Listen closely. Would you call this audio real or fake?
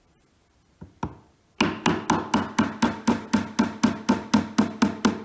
real